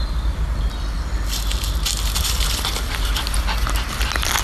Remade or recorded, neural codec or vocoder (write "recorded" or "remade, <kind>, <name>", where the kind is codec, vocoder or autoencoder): recorded